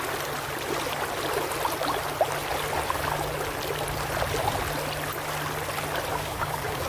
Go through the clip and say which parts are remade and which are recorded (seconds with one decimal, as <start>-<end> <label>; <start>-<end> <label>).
0.0-6.1 recorded; 6.1-6.9 remade